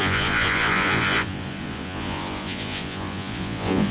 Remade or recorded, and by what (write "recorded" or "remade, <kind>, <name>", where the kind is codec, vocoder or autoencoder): remade, vocoder, Vocos